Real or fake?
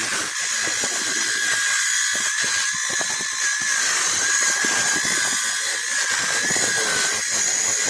real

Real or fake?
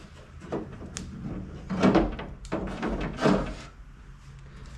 real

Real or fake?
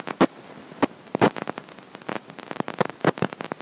real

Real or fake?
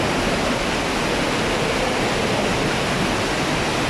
real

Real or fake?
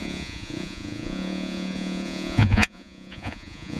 fake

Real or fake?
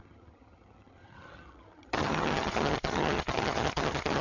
fake